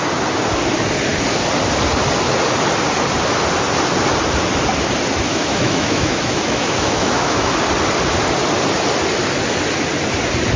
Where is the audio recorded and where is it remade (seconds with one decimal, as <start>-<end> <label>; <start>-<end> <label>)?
0.0-5.3 recorded; 5.3-7.5 remade; 7.5-10.6 recorded